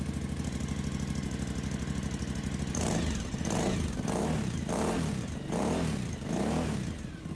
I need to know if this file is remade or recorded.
recorded